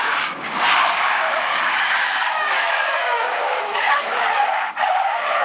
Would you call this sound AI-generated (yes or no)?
yes